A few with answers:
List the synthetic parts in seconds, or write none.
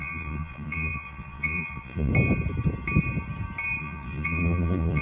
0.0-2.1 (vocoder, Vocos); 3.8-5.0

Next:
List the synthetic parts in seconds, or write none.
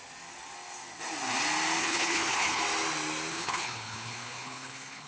1.8-2.6 (codec, HILCodec); 3.3-5.1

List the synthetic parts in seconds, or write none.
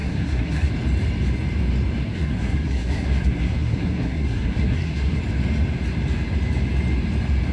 0.0-0.7 (codec, SNAC); 2.0-5.2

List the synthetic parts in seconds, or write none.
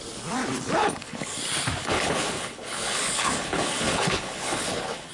0.8-1.4 (codec, HILCodec); 1.8-5.1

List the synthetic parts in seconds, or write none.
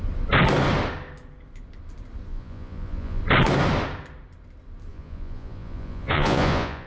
2.3-3.2 (vocoder, Vocos); 4.9-6.9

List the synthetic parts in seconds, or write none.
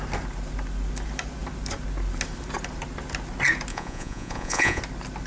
3.7-4.8 (vocoder, Vocos)